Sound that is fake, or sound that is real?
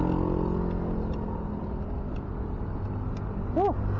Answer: real